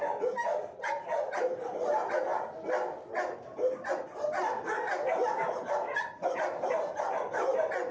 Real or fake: real